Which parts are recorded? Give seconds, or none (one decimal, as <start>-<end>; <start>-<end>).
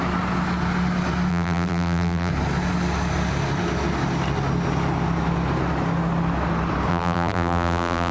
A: 0.0-1.3; 2.3-6.9